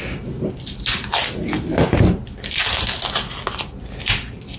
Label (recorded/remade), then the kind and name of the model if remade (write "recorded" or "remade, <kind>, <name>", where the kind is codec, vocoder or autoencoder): recorded